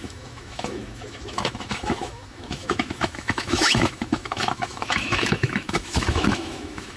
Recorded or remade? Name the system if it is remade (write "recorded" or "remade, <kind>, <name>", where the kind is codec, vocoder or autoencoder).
remade, autoencoder, DAC-VAE